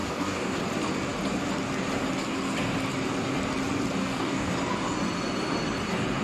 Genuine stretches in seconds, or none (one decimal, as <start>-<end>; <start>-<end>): 0.6-4.0; 4.5-6.2